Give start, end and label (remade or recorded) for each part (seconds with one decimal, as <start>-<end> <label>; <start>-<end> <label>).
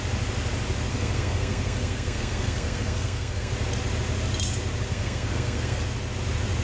0.0-0.9 recorded; 0.9-3.5 remade; 3.5-4.9 recorded; 4.9-5.8 remade; 5.8-6.6 recorded